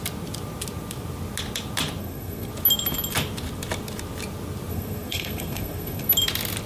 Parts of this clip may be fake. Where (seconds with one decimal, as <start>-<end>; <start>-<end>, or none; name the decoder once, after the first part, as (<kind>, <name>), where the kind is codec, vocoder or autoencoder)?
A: 2.0-2.5 (codec, SNAC); 4.7-6.1